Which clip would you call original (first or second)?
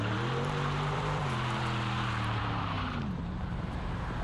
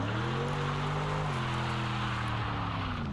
second